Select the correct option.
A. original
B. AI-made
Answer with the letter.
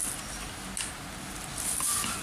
A